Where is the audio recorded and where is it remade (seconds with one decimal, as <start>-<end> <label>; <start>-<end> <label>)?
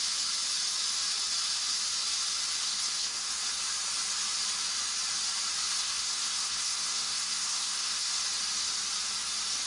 0.0-2.6 recorded; 2.6-3.3 remade; 3.3-5.7 recorded; 5.7-8.2 remade; 8.2-9.7 recorded